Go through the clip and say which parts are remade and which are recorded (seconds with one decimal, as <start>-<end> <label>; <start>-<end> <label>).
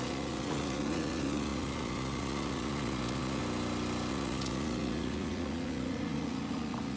0.0-3.4 remade; 3.4-4.1 recorded; 4.1-7.0 remade